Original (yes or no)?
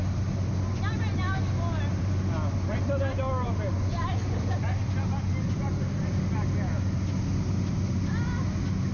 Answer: yes